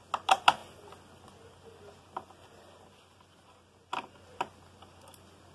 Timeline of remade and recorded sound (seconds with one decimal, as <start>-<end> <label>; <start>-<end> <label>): 0.0-5.5 recorded